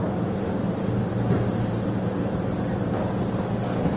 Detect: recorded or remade recorded